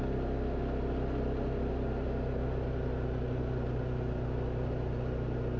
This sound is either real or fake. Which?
real